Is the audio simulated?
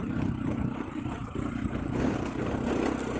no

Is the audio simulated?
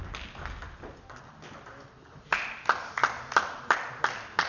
no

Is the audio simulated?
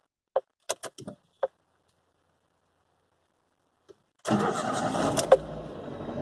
no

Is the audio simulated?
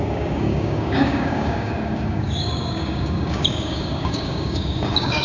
yes